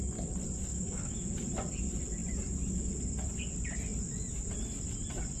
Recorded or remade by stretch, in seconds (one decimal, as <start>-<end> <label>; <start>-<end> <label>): 0.0-0.7 recorded; 0.7-1.3 remade; 1.3-5.4 recorded